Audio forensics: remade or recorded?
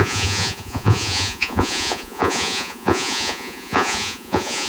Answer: remade